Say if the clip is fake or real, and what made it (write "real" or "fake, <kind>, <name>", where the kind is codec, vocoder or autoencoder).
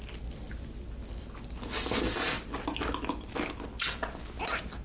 real